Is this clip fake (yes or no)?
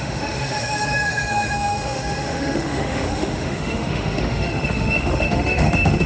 yes